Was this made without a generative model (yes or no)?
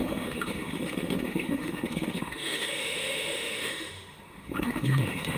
no